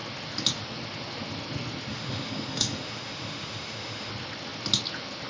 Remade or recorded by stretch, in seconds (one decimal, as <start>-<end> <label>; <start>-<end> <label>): 0.0-1.9 recorded; 1.9-4.1 remade; 4.1-5.3 recorded